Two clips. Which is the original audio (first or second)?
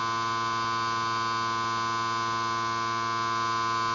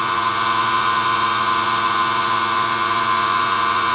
first